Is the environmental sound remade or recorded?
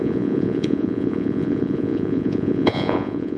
remade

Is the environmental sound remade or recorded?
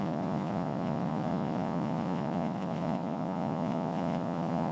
remade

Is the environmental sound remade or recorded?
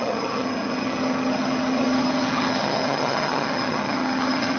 remade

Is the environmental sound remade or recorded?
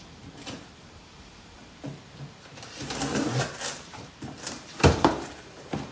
remade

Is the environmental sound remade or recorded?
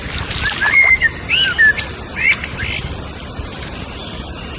recorded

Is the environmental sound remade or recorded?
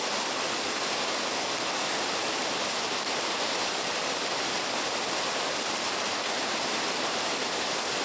recorded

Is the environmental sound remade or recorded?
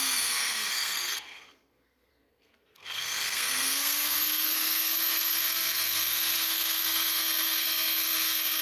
remade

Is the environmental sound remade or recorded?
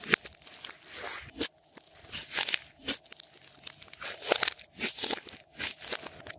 recorded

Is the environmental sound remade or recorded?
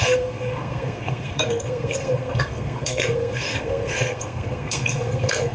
remade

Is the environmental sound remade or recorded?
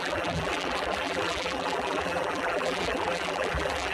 remade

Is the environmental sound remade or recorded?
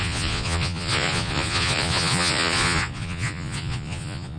remade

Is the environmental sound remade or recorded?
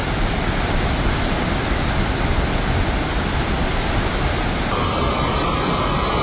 recorded